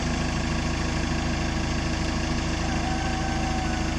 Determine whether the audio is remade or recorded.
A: recorded